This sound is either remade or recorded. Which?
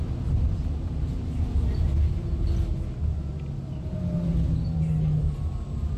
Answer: recorded